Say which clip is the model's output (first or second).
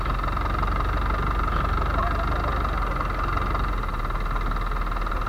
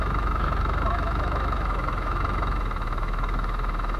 second